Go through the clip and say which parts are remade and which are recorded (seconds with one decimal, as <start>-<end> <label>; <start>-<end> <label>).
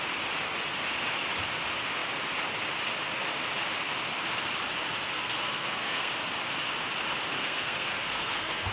0.0-5.2 recorded; 5.2-6.1 remade; 6.1-7.3 recorded; 7.3-8.7 remade